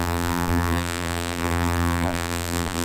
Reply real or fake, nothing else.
fake